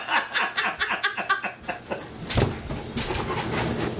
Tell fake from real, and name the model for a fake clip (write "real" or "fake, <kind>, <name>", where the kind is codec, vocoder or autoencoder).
real